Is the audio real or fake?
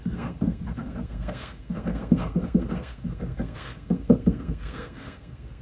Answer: fake